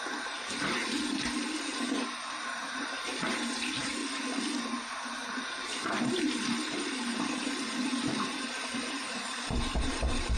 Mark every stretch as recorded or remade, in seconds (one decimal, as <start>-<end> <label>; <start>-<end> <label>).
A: 0.0-4.0 remade; 4.0-4.6 recorded; 4.6-10.4 remade